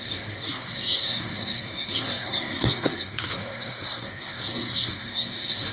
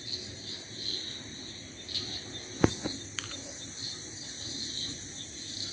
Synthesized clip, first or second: first